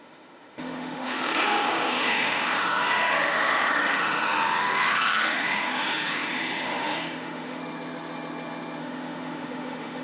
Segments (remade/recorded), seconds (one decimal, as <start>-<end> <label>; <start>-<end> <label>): 0.0-7.6 remade; 7.6-8.8 recorded; 8.8-10.0 remade